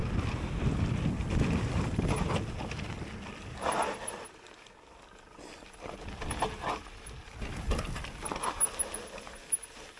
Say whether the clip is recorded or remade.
recorded